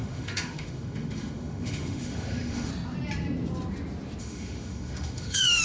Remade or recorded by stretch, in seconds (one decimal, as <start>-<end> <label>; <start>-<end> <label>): 0.0-2.7 remade; 2.7-4.2 recorded; 4.2-5.6 remade